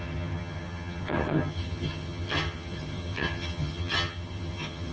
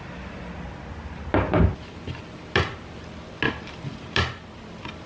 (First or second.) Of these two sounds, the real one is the second